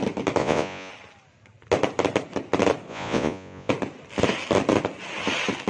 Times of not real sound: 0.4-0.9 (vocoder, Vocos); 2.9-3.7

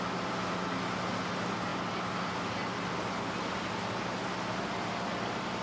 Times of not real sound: none

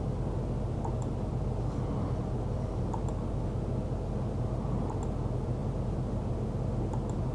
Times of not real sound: none

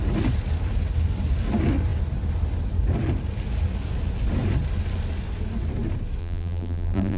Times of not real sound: 6.2-7.2 (vocoder, BigVGAN v2)